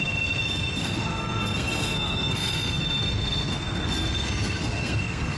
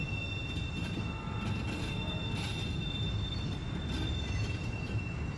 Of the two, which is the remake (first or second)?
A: first